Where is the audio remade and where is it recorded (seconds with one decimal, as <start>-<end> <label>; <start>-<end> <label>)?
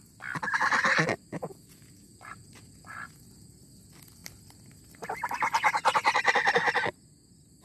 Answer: 0.0-1.3 recorded; 1.3-3.6 remade; 3.6-7.6 recorded